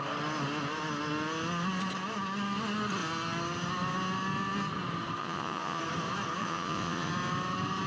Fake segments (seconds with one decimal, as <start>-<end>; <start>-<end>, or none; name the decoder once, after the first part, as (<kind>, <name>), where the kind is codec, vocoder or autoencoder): 5.2-5.8 (vocoder, Vocos); 6.4-7.1